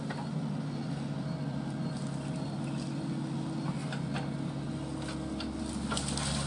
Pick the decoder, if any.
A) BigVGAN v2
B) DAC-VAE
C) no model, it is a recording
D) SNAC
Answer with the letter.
C